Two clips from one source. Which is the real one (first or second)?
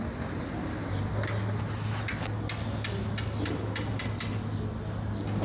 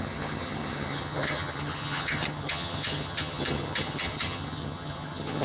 first